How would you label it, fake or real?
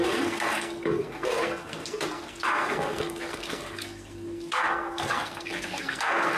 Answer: fake